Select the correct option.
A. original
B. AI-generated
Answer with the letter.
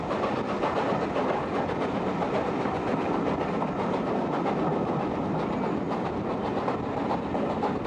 A